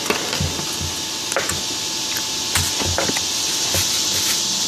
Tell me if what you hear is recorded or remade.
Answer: recorded